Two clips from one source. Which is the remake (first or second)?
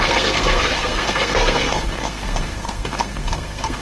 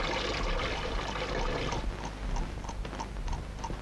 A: first